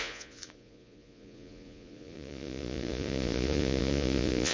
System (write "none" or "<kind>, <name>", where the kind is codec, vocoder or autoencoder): vocoder, Vocos